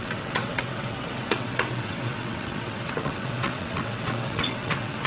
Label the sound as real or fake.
fake